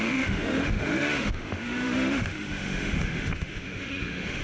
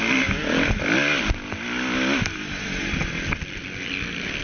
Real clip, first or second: second